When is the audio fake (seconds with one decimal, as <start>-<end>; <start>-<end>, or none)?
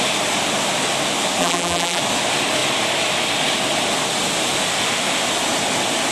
1.4-2.0